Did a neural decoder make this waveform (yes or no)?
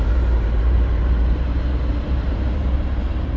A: yes